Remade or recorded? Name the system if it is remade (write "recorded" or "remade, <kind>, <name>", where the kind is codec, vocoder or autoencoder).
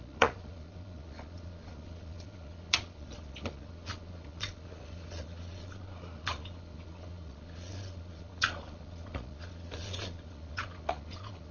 remade, vocoder, Vocos